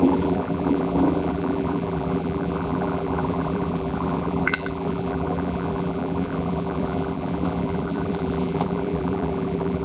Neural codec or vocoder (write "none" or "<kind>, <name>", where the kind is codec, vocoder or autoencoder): vocoder, BigVGAN v2